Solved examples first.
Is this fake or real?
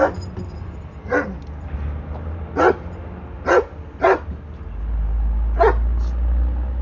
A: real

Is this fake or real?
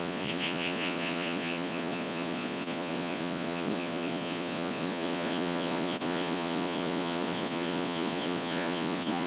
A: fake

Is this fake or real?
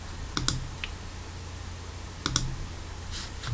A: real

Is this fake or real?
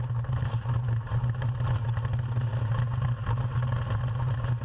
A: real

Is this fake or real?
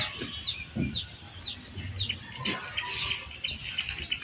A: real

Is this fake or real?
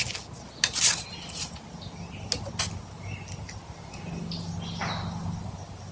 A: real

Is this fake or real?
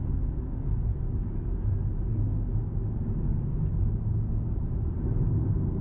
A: real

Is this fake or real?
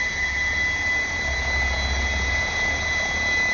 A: real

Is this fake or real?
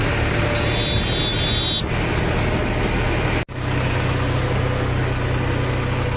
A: real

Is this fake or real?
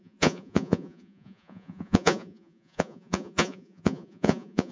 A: fake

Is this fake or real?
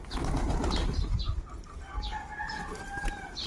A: real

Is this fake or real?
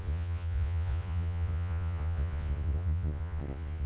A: fake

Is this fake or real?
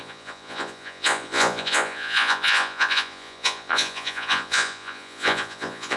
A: fake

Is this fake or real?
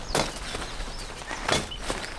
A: real